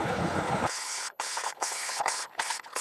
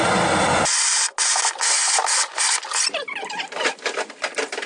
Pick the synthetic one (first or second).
first